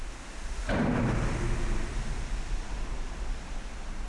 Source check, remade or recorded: recorded